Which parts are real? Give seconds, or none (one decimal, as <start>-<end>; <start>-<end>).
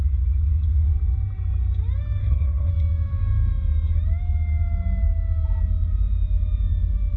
0.0-2.2; 2.7-7.2